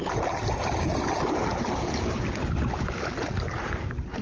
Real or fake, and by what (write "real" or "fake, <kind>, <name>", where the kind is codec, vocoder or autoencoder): fake, vocoder, BigVGAN v2